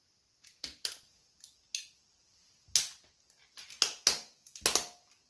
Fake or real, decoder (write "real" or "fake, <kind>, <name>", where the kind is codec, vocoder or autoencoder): real